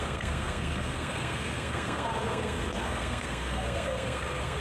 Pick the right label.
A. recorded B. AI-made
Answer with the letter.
B